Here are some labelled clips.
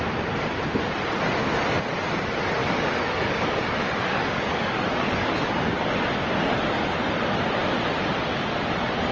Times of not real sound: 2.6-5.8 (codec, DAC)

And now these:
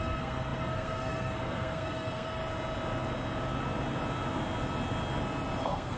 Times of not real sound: 0.0-2.4 (codec, SNAC); 5.6-6.0

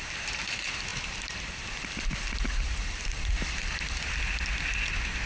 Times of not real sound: none